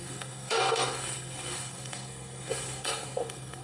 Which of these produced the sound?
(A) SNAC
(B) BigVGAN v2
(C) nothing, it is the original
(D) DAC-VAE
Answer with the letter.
A